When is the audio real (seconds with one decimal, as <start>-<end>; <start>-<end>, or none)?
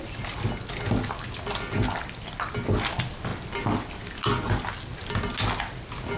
0.0-6.2